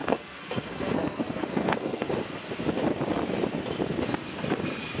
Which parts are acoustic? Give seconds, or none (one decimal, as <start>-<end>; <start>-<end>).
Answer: 2.1-5.0